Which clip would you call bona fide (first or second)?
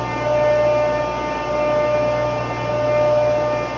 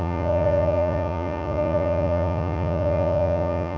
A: first